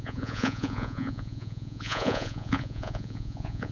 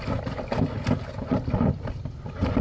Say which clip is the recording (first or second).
second